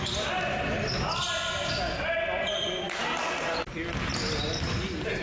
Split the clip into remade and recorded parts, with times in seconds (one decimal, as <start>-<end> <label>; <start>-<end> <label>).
0.0-5.2 recorded